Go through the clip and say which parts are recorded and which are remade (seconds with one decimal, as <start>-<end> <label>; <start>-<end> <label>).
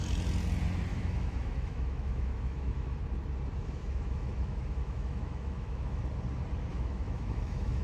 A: 0.0-0.9 recorded; 0.9-3.0 remade; 3.0-3.6 recorded; 3.6-6.0 remade; 6.0-6.7 recorded; 6.7-7.8 remade